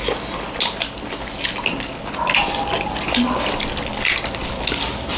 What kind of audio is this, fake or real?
real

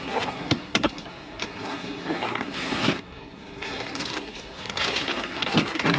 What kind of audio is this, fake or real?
fake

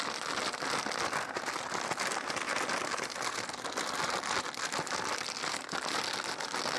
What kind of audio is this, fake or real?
real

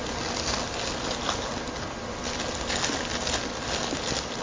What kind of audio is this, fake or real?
real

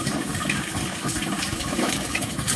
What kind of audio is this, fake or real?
fake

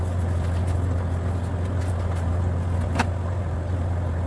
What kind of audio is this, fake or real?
real